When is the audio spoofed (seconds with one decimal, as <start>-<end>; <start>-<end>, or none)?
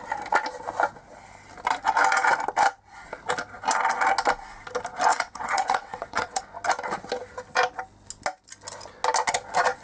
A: 5.1-6.4